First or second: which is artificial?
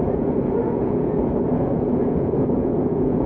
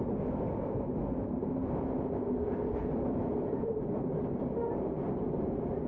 first